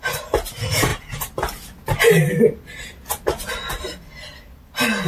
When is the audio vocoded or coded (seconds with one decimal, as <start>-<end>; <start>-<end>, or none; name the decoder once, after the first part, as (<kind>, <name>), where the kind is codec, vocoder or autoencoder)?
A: none